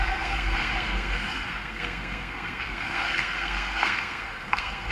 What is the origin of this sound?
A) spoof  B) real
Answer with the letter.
A